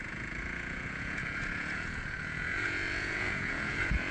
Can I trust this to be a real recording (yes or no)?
no